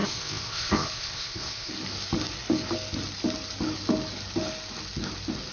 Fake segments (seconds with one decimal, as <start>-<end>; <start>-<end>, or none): 0.0-1.7